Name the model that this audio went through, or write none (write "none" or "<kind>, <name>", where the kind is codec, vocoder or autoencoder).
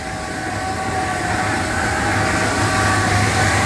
none